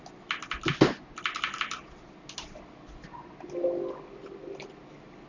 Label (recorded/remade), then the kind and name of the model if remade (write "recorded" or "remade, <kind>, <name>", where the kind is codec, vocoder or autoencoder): recorded